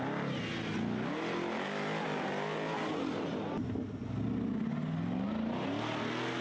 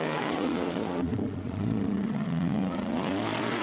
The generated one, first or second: second